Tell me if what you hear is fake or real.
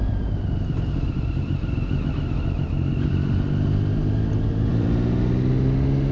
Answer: real